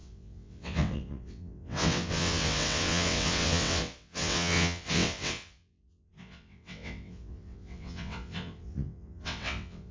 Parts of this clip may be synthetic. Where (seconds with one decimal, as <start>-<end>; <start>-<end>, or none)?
0.0-9.9

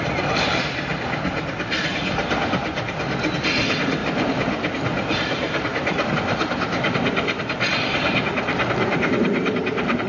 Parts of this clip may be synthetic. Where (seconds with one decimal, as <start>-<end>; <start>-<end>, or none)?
4.0-6.1

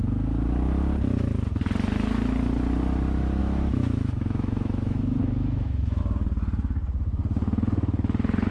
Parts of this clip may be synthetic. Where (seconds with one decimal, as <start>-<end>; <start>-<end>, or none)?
3.4-6.0

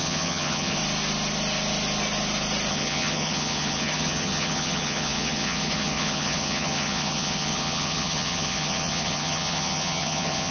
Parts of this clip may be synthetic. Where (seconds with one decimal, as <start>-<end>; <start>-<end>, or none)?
0.0-0.8; 2.7-10.5

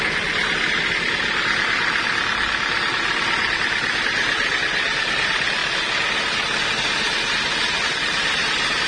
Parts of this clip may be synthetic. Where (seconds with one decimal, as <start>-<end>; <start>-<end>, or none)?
none

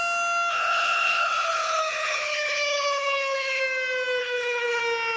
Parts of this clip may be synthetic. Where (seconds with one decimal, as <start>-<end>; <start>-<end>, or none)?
0.5-3.6; 4.2-4.8